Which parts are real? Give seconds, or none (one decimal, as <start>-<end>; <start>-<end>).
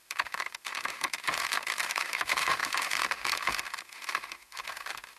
none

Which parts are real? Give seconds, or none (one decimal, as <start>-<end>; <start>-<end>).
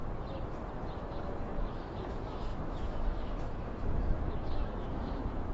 0.0-0.9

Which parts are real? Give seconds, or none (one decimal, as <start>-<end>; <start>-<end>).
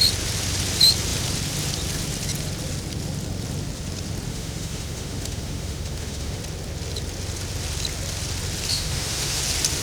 0.0-4.3; 6.4-8.7; 9.4-9.8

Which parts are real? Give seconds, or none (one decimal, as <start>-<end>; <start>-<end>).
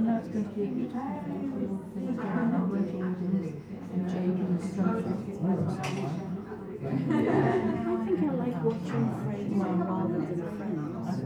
1.2-2.4; 5.0-5.4; 8.1-11.3